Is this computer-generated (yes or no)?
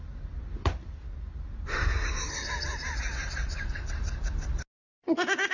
no